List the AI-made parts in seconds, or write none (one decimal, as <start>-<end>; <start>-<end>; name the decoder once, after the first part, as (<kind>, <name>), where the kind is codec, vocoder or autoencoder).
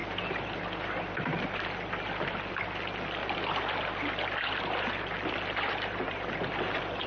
none